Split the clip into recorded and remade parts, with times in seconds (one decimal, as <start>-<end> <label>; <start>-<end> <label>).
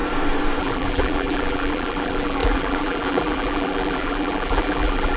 0.0-0.6 recorded; 0.6-5.2 remade